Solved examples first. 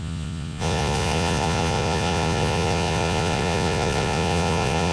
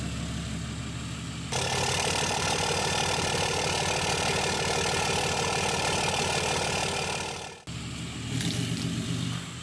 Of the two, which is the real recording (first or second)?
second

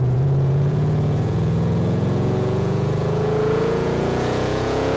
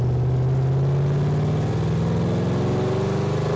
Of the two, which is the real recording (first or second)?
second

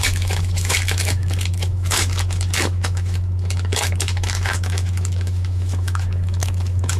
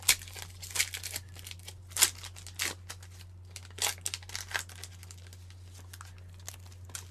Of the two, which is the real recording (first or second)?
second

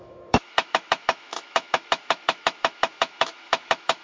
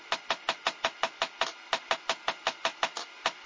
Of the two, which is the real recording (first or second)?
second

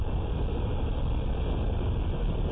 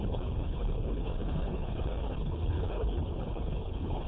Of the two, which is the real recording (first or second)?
first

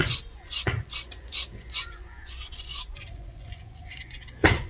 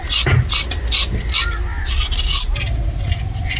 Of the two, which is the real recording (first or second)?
second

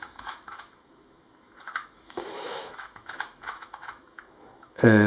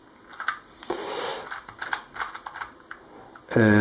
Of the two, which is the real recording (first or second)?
second